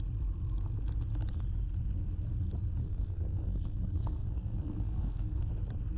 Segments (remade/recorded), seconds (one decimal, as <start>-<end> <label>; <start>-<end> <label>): 0.0-2.8 recorded; 2.8-5.5 remade; 5.5-6.0 recorded